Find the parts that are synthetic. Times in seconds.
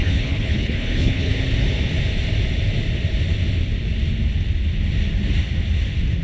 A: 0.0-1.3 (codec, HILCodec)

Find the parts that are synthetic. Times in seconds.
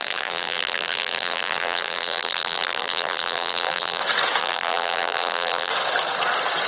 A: 0.0-4.0 (vocoder, BigVGAN v2); 4.4-5.7